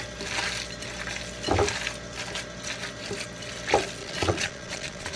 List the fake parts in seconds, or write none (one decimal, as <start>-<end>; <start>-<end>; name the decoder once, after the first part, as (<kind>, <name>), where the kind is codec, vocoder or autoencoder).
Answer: 4.0-5.2 (vocoder, Vocos)